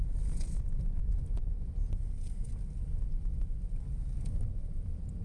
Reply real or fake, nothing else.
fake